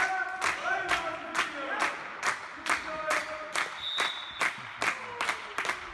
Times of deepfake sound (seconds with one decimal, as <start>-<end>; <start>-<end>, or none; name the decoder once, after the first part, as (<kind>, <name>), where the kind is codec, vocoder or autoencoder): none